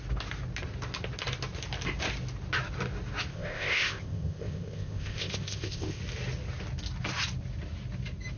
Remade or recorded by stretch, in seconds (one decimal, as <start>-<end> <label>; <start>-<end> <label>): 0.0-3.3 recorded; 3.3-6.0 remade; 6.0-8.4 recorded